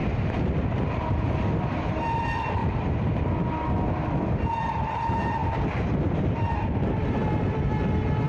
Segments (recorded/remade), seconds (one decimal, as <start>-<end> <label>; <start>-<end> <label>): 0.0-1.5 recorded; 1.5-2.6 remade; 2.6-4.1 recorded; 4.1-8.3 remade